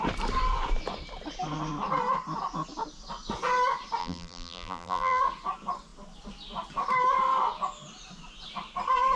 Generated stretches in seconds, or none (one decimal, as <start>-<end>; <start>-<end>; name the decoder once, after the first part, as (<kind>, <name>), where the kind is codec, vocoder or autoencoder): 4.0-5.2 (vocoder, BigVGAN v2)